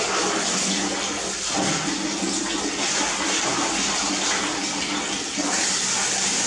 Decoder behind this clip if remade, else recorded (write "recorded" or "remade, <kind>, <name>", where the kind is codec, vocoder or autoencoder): recorded